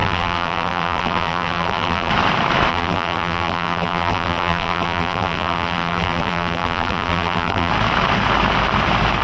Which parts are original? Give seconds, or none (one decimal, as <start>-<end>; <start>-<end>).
2.1-2.7; 7.7-9.2